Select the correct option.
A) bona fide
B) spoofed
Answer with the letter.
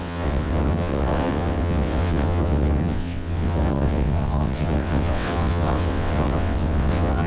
B